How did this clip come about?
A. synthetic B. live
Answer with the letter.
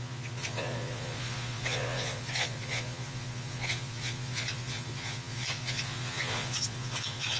A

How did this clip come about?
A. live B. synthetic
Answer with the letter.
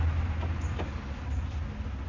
A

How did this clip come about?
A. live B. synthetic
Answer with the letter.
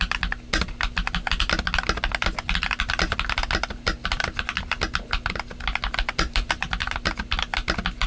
A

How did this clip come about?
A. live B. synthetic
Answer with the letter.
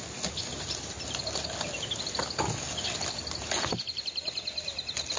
A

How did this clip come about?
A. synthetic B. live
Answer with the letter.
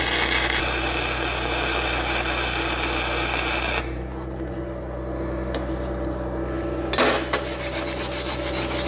B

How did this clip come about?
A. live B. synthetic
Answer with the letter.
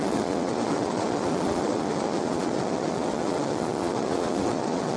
B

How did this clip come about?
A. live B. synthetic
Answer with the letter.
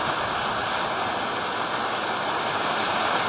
A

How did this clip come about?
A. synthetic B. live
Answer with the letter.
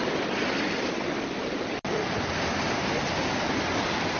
B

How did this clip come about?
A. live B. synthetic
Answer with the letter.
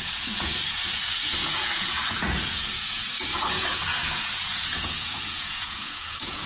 B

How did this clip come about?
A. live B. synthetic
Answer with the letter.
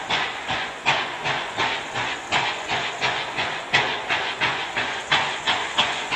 B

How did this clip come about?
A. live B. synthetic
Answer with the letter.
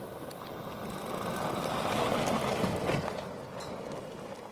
A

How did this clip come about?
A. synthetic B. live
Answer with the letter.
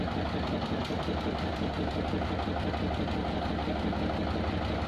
B